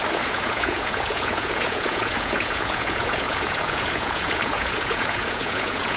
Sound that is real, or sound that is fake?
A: fake